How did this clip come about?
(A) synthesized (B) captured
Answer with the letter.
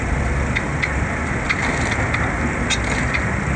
B